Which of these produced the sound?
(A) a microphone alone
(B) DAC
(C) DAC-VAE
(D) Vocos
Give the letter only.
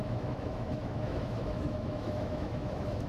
C